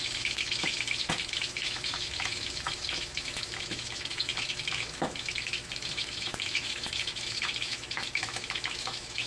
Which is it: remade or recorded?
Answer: remade